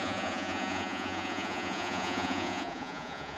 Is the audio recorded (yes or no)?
no